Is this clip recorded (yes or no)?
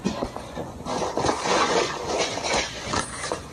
no